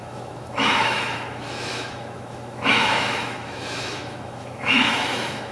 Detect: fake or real fake